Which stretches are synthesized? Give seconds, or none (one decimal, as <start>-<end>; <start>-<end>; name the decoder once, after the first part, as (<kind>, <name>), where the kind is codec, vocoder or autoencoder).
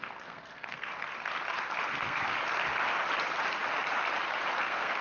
0.0-0.9 (codec, SNAC); 1.9-2.4; 4.6-5.0